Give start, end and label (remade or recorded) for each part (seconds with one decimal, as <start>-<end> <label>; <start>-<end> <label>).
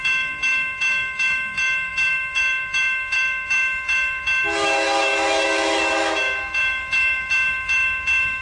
0.0-8.4 remade